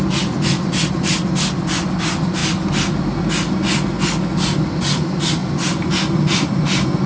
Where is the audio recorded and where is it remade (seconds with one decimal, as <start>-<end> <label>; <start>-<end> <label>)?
0.0-7.1 recorded